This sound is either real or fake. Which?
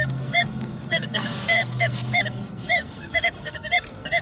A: fake